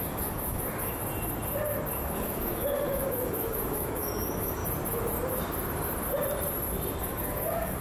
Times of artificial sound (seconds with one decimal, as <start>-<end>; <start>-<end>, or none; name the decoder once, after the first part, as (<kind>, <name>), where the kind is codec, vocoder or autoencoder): 0.0-1.0 (codec, DAC); 1.9-4.6; 7.0-7.8